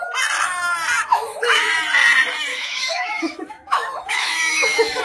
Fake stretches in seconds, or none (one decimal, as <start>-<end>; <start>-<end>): 1.1-1.7; 2.5-5.0